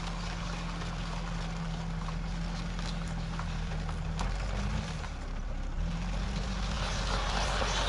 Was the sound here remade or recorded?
recorded